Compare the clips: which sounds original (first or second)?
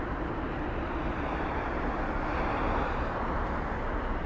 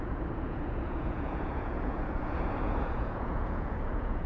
first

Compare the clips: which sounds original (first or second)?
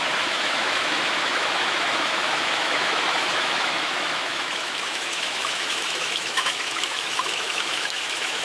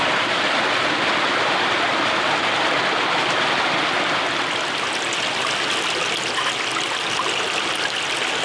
second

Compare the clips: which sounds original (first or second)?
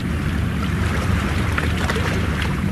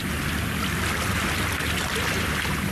second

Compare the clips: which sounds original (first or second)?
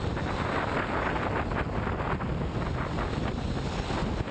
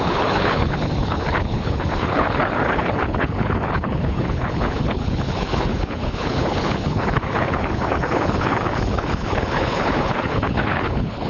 first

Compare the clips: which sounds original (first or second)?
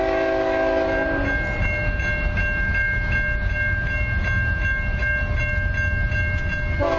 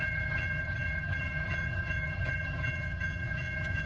first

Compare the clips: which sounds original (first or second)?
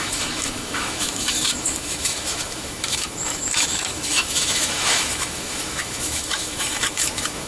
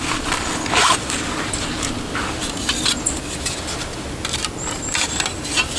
second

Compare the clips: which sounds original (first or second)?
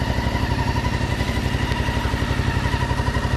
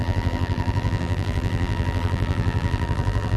first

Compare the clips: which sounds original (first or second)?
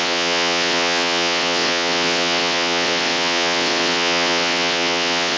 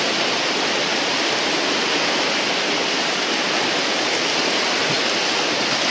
second